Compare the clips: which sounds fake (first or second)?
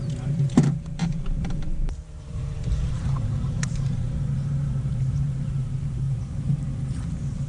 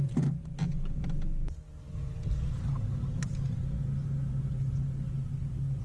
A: first